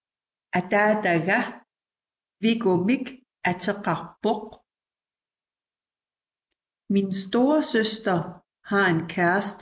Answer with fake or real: real